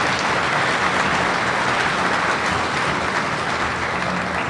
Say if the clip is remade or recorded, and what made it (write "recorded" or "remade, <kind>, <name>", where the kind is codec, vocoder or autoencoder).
recorded